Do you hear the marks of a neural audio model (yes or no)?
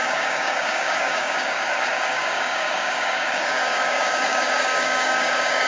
yes